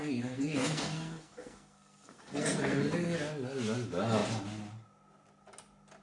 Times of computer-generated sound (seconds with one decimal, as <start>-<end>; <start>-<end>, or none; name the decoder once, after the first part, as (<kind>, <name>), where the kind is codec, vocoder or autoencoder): 0.0-2.8 (codec, SNAC)